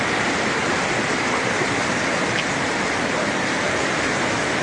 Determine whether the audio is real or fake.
fake